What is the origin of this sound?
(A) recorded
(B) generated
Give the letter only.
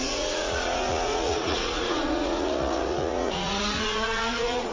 B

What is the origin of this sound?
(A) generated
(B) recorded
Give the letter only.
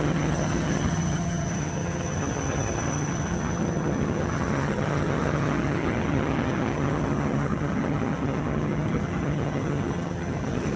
A